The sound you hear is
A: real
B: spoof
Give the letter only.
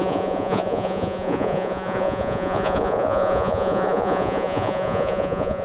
B